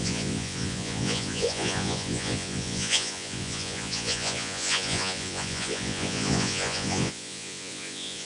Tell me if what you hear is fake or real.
fake